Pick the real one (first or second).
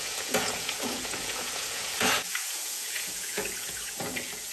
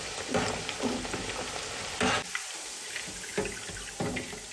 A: second